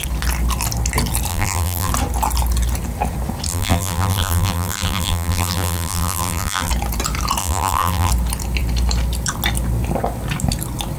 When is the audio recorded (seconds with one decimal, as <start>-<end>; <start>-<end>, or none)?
0.0-1.3; 1.9-3.5; 6.7-7.4; 8.1-11.0